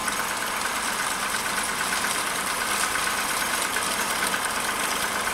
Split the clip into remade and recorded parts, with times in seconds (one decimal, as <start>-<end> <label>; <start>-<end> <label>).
0.0-5.3 recorded